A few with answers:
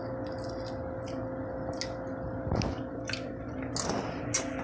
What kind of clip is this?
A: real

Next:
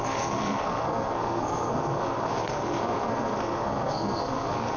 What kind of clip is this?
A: fake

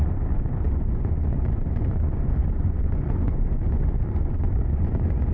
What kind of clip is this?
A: fake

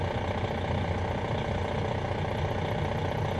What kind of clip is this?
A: real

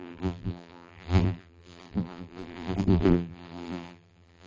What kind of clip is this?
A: fake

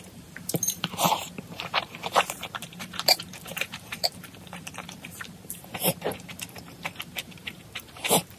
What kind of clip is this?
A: fake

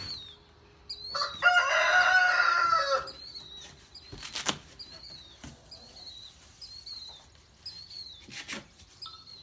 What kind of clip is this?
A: real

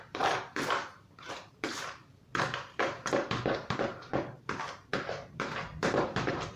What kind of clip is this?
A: fake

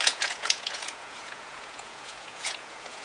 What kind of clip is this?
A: fake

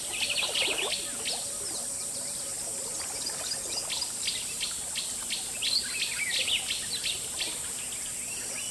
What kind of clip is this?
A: real